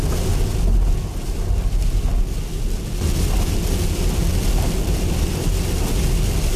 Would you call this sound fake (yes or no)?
no